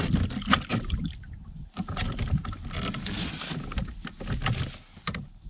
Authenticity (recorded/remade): recorded